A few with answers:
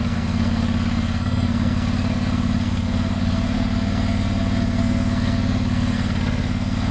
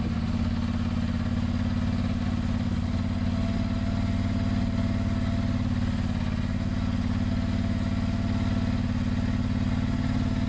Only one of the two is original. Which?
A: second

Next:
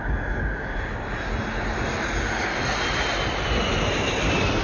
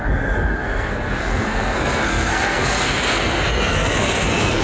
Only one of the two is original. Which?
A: first